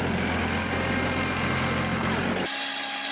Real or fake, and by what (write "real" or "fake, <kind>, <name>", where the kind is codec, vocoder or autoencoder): real